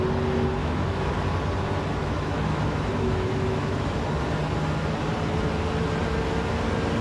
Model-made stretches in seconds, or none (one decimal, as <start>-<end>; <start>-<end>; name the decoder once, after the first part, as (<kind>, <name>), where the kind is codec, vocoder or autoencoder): 0.6-1.1 (autoencoder, DAC-VAE); 2.0-4.0